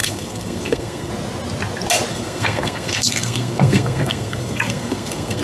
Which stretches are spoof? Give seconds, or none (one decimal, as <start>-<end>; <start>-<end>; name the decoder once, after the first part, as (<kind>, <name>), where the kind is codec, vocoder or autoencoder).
0.0-1.1 (codec, SNAC); 2.1-5.4